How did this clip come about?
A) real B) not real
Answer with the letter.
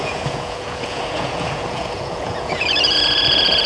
B